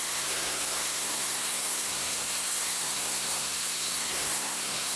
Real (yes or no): no